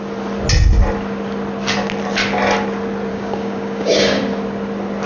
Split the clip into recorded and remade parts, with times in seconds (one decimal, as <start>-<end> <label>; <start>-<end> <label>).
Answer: 0.0-3.1 recorded; 3.1-4.2 remade; 4.2-5.1 recorded